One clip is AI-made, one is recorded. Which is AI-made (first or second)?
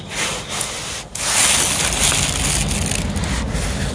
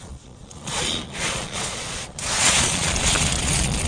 second